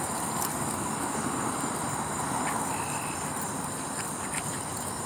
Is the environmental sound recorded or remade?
recorded